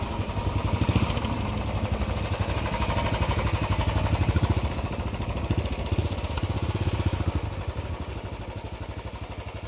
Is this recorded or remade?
recorded